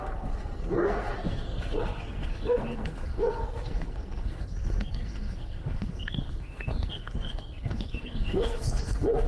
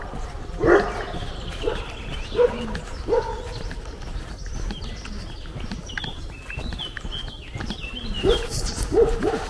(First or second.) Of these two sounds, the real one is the second